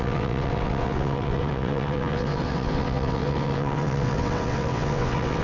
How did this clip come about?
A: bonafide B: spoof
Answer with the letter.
B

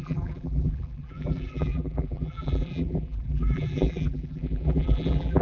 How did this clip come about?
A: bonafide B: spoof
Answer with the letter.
B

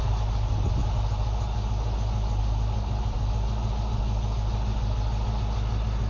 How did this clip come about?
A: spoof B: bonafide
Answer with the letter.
B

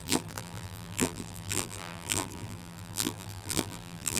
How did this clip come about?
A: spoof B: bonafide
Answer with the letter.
A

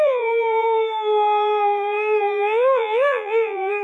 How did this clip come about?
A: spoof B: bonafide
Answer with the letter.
A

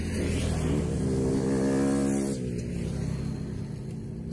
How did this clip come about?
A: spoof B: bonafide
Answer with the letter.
B